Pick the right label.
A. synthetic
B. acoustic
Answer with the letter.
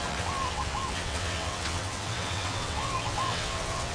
A